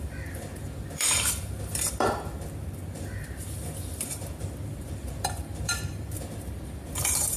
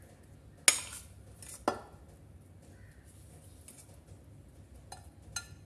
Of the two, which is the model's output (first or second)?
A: first